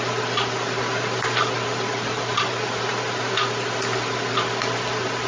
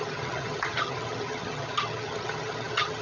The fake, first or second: second